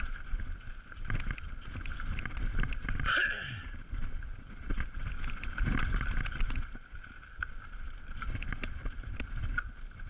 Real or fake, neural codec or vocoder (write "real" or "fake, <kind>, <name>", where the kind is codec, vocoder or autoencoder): real